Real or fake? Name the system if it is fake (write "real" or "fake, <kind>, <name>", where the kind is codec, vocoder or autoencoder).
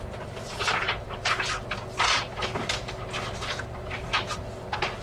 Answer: real